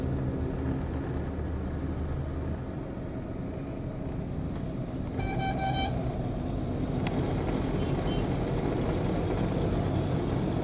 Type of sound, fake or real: real